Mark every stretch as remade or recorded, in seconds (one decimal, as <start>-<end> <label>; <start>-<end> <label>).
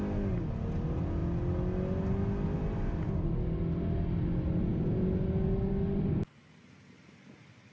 0.0-7.7 recorded